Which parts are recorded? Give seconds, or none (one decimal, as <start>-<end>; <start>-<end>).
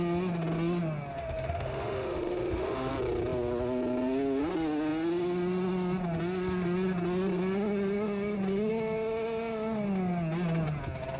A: 0.0-1.2; 2.9-11.2